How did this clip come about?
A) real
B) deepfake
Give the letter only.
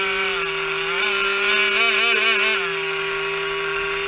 A